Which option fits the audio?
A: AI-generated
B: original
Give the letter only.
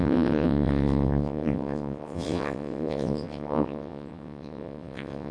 A